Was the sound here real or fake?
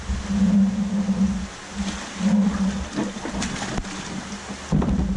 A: real